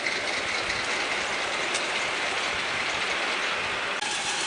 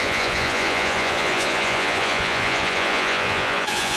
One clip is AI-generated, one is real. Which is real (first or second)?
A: first